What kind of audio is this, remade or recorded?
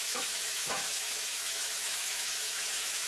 remade